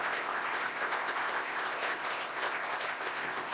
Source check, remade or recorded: remade